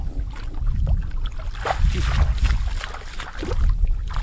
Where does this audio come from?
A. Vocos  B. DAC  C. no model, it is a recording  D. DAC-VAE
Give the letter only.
C